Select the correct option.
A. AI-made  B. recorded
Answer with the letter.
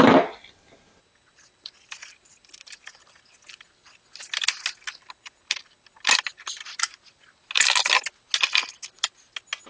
B